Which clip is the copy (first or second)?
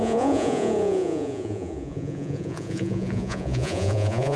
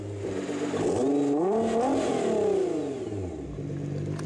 first